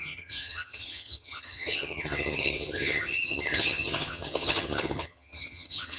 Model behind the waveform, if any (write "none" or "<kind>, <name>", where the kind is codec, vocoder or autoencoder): vocoder, HiFi-GAN